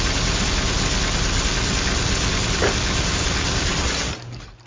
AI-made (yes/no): no